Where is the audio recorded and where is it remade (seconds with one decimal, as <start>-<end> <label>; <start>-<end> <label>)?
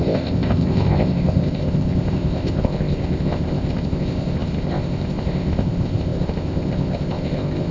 0.0-7.7 remade